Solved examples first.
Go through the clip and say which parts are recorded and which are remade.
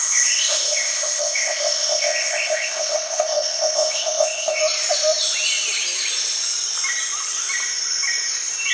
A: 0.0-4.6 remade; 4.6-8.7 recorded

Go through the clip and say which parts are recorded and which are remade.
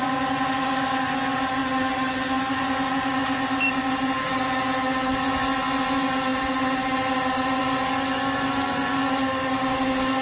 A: 0.0-10.2 recorded